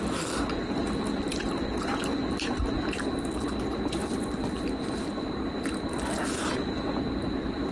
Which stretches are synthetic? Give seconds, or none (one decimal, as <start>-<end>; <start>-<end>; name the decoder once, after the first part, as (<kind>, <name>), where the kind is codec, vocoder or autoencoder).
none